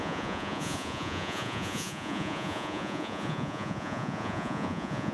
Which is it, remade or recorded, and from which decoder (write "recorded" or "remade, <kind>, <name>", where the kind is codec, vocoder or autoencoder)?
remade, vocoder, Vocos